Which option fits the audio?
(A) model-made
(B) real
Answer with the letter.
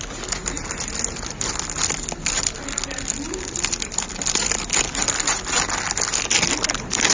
B